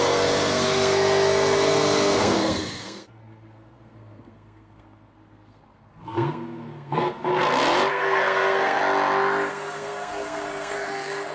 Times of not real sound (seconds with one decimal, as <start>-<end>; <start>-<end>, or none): 0.0-7.3; 7.9-8.8; 9.5-11.3